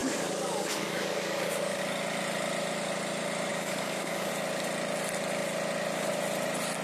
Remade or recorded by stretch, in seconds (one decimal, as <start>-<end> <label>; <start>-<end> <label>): 0.0-1.8 remade; 1.8-3.5 recorded; 3.5-4.3 remade; 4.3-6.8 recorded